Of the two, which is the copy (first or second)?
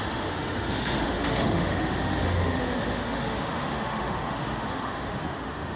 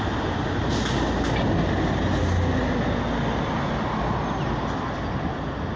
first